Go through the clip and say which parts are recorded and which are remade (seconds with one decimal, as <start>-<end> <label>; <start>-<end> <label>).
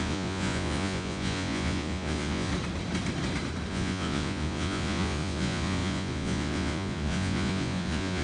0.0-2.5 remade; 2.5-3.7 recorded; 3.7-8.2 remade